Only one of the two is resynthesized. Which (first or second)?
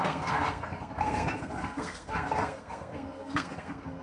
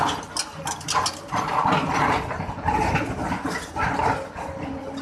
first